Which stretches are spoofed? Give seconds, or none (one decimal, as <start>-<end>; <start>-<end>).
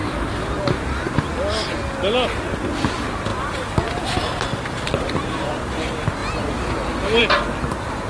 none